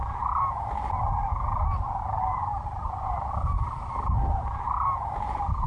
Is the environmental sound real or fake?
fake